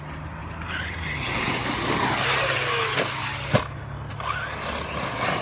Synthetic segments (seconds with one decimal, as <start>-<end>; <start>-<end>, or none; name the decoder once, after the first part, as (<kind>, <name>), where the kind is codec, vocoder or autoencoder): none